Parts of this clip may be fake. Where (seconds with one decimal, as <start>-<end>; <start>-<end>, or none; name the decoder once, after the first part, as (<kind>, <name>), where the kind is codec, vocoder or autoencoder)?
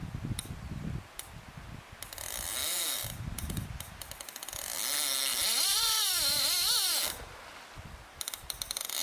2.6-4.1 (vocoder, BigVGAN v2); 5.3-6.0